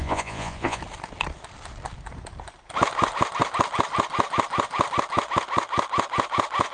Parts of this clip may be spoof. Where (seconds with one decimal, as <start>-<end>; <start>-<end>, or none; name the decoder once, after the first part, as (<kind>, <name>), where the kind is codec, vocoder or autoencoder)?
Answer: 0.0-0.8 (vocoder, Vocos)

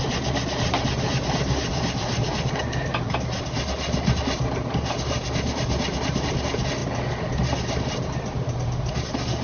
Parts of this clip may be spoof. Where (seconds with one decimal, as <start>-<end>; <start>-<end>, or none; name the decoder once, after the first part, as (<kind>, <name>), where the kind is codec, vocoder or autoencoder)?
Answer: none

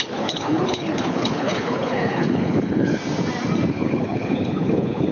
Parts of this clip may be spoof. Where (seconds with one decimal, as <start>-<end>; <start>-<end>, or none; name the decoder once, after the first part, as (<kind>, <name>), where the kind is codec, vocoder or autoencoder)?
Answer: 0.0-3.0 (codec, HILCodec); 3.7-5.1

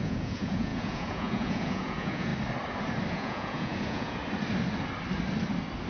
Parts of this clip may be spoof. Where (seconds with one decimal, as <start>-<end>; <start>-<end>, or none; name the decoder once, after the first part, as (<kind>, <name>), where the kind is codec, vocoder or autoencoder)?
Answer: 0.0-2.3 (vocoder, Vocos); 3.1-4.2

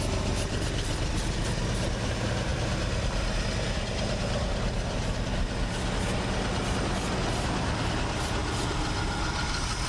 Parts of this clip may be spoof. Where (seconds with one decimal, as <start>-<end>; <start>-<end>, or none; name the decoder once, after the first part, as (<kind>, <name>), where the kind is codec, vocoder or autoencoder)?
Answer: none